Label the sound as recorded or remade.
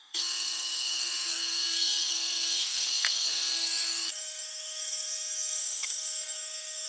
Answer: remade